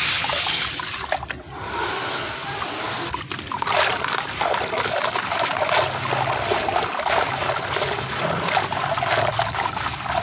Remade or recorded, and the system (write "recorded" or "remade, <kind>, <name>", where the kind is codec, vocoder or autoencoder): recorded